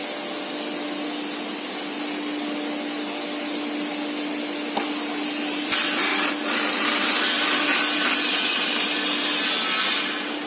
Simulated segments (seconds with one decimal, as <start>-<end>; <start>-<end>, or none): none